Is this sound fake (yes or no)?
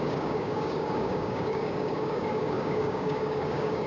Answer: yes